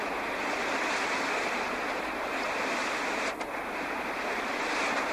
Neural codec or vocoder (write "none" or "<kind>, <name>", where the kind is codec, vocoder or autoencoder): none